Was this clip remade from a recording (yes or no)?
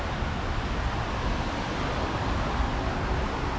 no